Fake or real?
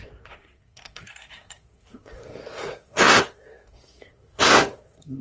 fake